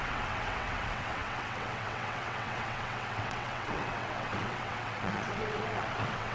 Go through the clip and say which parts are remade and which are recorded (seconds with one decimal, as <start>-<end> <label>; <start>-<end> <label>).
0.0-6.3 remade